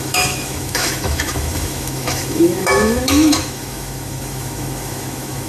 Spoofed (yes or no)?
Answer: yes